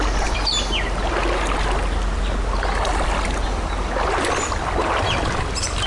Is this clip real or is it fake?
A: real